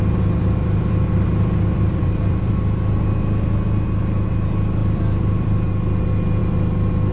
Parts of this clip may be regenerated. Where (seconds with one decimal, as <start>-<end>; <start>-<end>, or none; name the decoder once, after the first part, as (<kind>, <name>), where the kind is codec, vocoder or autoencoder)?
0.6-2.5 (vocoder, BigVGAN v2); 4.8-5.8

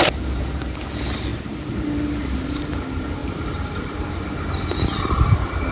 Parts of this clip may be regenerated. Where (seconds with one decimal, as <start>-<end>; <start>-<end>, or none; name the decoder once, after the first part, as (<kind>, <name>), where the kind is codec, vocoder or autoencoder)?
none

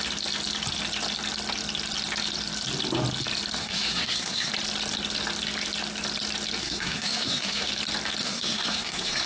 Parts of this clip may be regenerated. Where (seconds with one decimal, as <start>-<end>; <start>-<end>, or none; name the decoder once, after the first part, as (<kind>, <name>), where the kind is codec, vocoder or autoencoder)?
3.6-4.5 (codec, SNAC); 6.6-7.7; 8.2-9.3

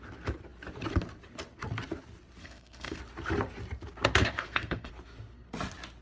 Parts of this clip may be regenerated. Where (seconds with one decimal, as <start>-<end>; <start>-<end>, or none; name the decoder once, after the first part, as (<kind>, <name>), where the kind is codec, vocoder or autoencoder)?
2.4-3.0 (codec, SNAC); 4.2-4.9

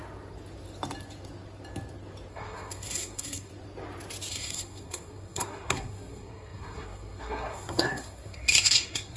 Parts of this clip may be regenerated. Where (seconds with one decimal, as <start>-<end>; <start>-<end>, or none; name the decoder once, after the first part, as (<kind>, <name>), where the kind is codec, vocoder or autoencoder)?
2.3-3.5 (codec, SNAC); 4.3-9.2

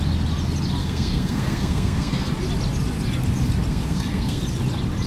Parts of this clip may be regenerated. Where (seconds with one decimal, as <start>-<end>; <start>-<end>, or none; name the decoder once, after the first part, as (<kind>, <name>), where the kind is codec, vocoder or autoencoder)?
0.8-2.3 (codec, SNAC); 3.7-4.4